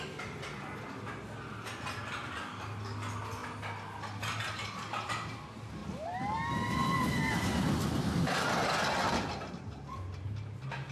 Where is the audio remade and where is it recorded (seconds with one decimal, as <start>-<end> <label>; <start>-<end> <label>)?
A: 0.0-10.9 recorded